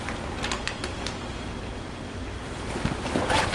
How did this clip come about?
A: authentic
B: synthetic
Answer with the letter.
A